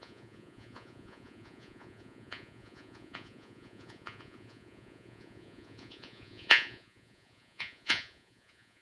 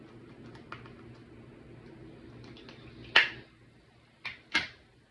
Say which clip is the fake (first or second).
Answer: first